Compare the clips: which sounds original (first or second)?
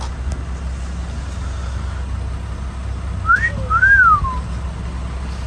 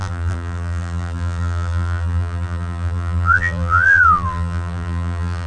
first